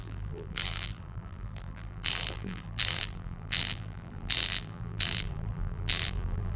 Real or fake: fake